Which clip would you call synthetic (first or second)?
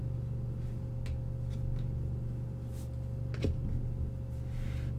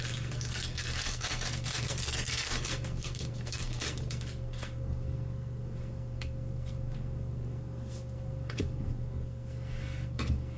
second